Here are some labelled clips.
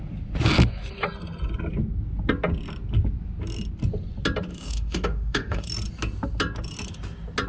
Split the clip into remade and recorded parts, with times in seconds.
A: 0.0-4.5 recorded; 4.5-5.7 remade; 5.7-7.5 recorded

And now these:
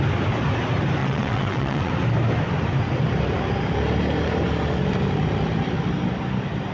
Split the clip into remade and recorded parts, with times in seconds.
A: 0.0-1.0 recorded; 1.0-1.9 remade; 1.9-6.7 recorded

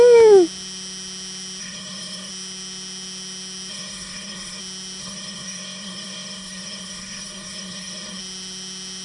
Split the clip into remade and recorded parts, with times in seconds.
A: 0.0-1.6 recorded; 1.6-2.3 remade; 2.3-3.7 recorded; 3.7-4.6 remade; 4.6-5.0 recorded; 5.0-8.2 remade; 8.2-9.0 recorded

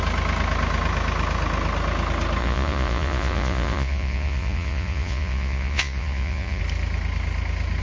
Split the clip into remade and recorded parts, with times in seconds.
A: 0.0-2.4 recorded; 2.4-6.6 remade; 6.6-7.8 recorded

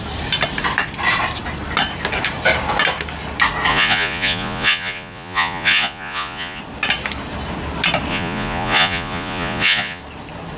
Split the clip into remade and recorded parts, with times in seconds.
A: 0.0-3.7 recorded; 3.7-6.6 remade; 6.6-8.1 recorded; 8.1-10.0 remade; 10.0-10.6 recorded

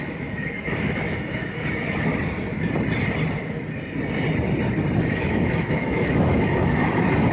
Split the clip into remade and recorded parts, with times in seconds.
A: 0.0-2.1 remade; 2.1-5.0 recorded; 5.0-7.3 remade

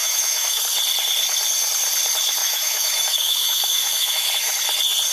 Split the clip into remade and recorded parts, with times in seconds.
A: 0.0-0.6 remade; 0.6-2.4 recorded; 2.4-4.3 remade; 4.3-5.1 recorded

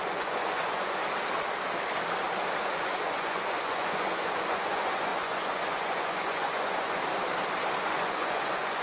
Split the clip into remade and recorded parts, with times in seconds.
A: 0.0-1.0 remade; 1.0-2.6 recorded; 2.6-7.0 remade; 7.0-7.9 recorded; 7.9-8.8 remade